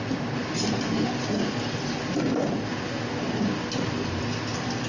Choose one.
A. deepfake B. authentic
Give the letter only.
B